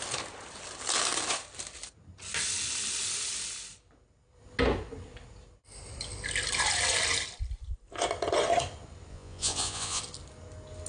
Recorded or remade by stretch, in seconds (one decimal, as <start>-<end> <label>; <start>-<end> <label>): 0.0-9.1 recorded; 9.1-10.0 remade; 10.0-10.9 recorded